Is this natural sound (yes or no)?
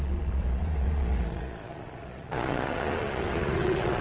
no